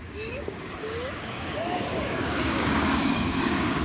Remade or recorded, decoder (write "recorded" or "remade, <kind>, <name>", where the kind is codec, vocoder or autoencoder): remade, codec, DAC